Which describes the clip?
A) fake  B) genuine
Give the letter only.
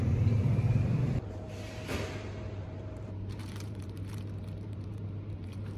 A